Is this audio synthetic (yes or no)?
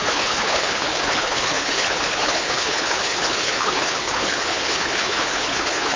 yes